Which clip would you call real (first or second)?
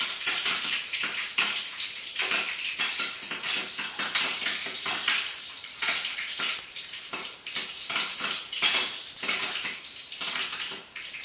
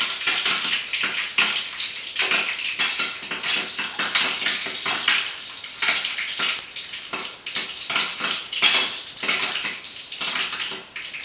second